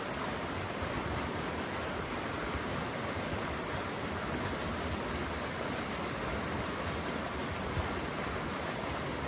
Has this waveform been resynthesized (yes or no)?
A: no